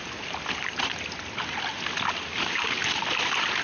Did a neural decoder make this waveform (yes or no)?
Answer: no